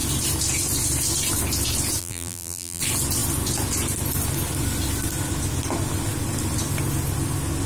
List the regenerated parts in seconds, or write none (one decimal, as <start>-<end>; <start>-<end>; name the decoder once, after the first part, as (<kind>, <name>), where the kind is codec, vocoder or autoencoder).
2.0-2.8 (vocoder, BigVGAN v2)